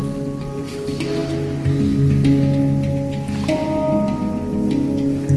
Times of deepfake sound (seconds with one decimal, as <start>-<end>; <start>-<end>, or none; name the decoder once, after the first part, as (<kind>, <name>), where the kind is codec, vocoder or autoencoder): none